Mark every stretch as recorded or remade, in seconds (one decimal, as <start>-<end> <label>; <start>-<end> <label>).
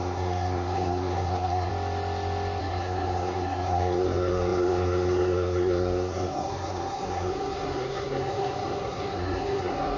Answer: 0.0-1.7 remade; 1.7-2.6 recorded; 2.6-10.0 remade